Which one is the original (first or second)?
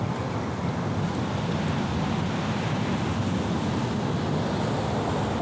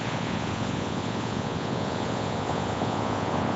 first